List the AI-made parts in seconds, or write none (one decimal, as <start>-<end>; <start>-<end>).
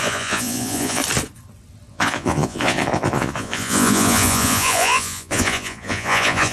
0.0-1.0; 1.9-6.5